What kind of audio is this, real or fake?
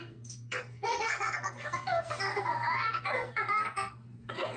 fake